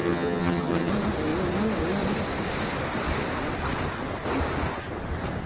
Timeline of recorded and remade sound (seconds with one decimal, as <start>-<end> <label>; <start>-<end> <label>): 0.0-0.9 remade; 0.9-5.5 recorded